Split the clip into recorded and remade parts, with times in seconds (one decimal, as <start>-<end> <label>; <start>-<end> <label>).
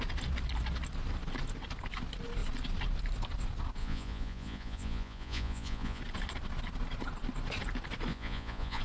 0.0-3.8 recorded; 3.8-6.0 remade; 6.0-8.1 recorded; 8.1-8.8 remade